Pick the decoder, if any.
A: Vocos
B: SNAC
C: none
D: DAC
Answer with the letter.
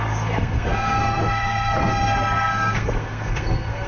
B